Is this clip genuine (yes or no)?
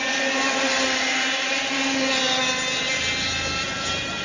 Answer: yes